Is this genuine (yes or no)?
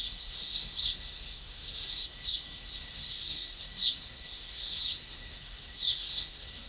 no